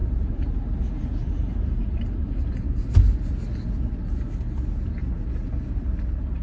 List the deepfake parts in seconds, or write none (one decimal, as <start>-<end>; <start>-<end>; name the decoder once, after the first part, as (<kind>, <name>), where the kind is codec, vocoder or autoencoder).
0.0-2.9 (vocoder, BigVGAN v2)